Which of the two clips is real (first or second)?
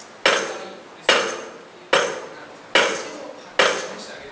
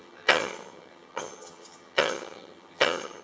first